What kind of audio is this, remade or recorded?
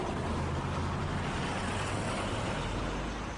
recorded